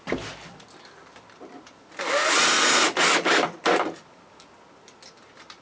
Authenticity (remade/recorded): recorded